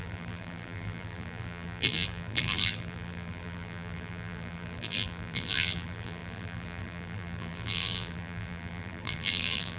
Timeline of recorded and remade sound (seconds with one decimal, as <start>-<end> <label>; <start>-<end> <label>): 0.0-9.8 remade